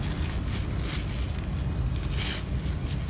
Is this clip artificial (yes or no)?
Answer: no